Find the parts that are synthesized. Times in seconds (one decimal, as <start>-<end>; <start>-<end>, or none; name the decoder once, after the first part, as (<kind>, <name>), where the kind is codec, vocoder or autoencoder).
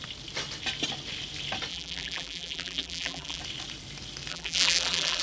1.7-3.4 (vocoder, BigVGAN v2); 4.3-5.2